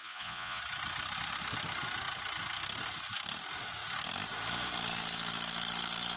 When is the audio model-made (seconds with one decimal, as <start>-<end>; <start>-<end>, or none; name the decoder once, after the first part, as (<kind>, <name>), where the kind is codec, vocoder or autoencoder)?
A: 0.0-0.6 (vocoder, Vocos)